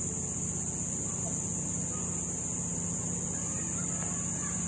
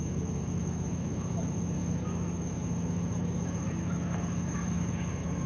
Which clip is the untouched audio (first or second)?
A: first